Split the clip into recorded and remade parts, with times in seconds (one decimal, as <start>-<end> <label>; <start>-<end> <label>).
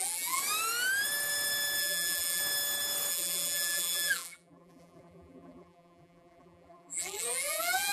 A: 0.0-0.4 remade; 0.4-1.8 recorded; 1.8-2.4 remade; 2.4-3.1 recorded; 3.1-7.9 remade